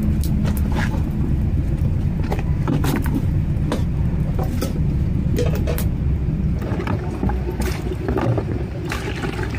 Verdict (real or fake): real